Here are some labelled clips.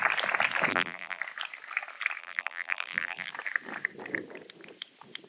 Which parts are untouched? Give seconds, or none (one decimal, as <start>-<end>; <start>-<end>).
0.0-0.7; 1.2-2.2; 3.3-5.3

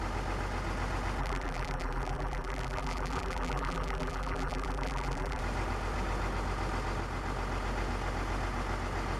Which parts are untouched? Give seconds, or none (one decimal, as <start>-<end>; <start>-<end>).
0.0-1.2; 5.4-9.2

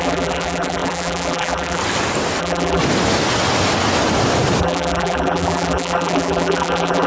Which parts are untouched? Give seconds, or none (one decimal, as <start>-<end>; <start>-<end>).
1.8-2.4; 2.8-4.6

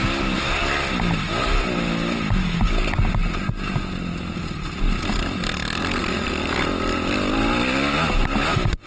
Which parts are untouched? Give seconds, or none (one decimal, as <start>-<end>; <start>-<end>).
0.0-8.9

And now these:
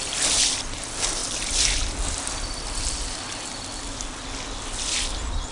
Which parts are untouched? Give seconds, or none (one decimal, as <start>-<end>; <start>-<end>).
0.0-5.5

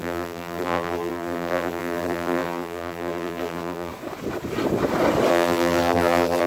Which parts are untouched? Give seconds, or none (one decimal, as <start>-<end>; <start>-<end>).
3.9-5.3

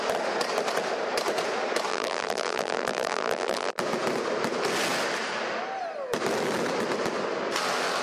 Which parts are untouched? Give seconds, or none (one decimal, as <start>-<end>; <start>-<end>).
0.0-1.9; 3.8-8.0

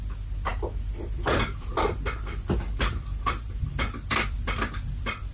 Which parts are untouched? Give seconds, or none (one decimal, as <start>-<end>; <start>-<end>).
none